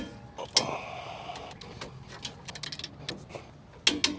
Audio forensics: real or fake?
real